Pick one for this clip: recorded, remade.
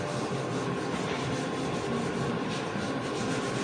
recorded